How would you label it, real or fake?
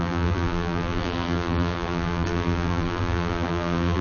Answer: fake